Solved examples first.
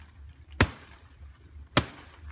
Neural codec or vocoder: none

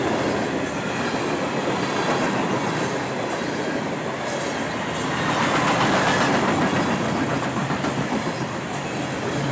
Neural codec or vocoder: none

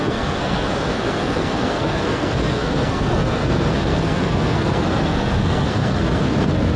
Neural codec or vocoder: codec, SNAC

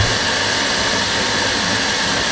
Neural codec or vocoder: none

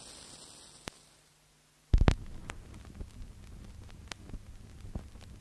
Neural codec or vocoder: none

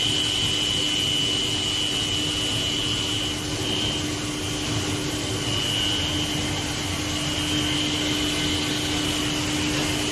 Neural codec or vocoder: none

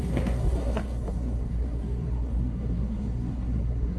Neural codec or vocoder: codec, SNAC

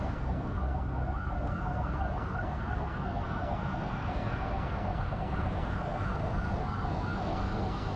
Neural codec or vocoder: codec, SNAC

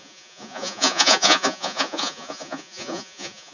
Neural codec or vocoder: vocoder, Vocos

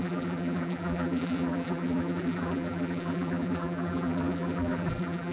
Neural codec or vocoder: vocoder, BigVGAN v2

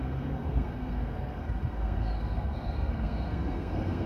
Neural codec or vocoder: codec, SNAC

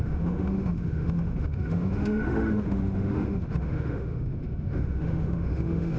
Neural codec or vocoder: autoencoder, DAC-VAE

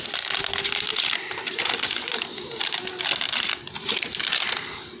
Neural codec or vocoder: none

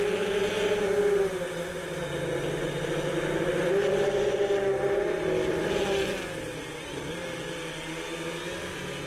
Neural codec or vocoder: none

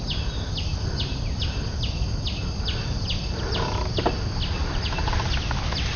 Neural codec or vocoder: none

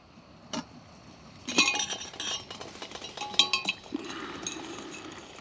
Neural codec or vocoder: none